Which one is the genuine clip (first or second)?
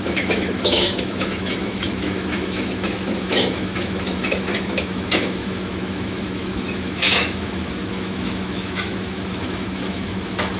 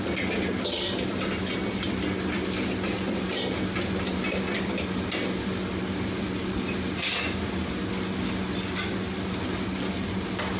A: second